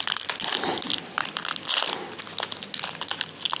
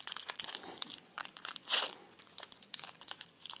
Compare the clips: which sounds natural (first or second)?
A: first